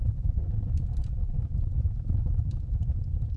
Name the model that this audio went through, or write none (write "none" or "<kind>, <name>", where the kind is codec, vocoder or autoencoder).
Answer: vocoder, BigVGAN v2